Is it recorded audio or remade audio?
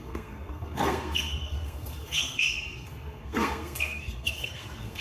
remade